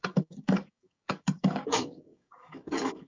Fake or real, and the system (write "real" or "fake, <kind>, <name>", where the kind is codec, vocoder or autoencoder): fake, codec, DAC